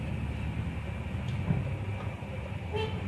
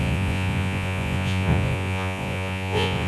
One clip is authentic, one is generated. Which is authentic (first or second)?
first